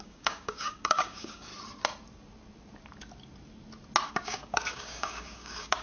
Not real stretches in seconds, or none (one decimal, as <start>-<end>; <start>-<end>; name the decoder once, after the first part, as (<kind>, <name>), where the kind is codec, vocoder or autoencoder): 0.0-1.5 (codec, DAC); 4.1-5.8